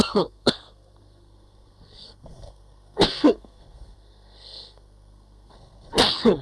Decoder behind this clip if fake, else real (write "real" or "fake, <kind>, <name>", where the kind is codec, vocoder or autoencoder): fake, codec, SNAC